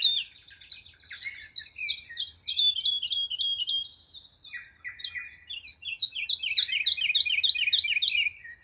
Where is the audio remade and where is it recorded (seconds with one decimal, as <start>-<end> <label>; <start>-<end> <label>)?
0.0-5.7 recorded; 5.7-6.3 remade; 6.3-8.6 recorded